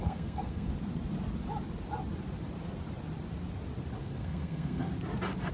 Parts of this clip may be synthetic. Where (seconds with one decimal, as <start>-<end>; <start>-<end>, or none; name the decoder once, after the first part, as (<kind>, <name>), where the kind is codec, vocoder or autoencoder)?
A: 0.0-0.7 (codec, SNAC); 4.0-4.9